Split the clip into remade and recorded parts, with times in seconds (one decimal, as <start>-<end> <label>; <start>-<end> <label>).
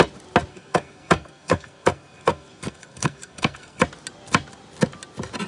0.0-0.5 recorded; 0.5-3.8 remade; 3.8-5.5 recorded